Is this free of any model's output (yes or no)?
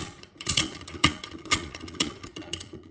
no